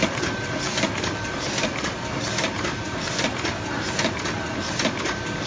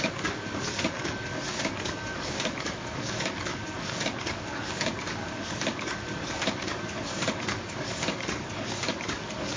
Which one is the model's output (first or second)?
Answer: second